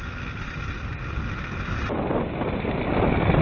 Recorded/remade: recorded